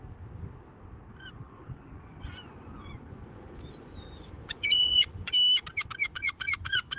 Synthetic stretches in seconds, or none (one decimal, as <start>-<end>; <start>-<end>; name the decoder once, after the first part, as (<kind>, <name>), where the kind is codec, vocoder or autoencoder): 1.1-5.3 (vocoder, Vocos); 6.0-7.0